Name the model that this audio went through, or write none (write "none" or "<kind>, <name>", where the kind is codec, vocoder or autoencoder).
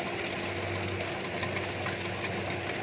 none